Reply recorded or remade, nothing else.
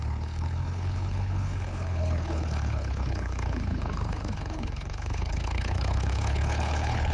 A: remade